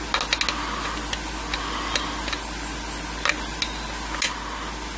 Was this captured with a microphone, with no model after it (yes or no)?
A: yes